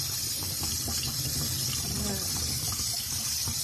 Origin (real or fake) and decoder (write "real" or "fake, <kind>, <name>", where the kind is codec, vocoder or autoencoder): fake, vocoder, BigVGAN v2